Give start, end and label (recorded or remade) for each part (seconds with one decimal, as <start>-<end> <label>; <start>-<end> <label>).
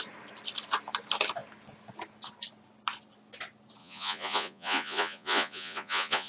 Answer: 0.0-3.8 recorded; 3.8-6.3 remade